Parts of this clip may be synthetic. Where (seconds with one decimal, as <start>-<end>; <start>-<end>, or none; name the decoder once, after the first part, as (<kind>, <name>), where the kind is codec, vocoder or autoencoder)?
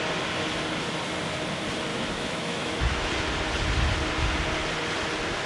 1.9-3.1 (autoencoder, DAC-VAE)